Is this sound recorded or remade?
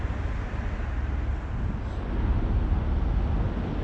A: recorded